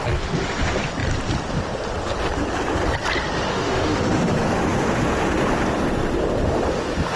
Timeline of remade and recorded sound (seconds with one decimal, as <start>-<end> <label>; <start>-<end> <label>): 0.0-3.5 recorded; 3.5-4.6 remade; 4.6-7.2 recorded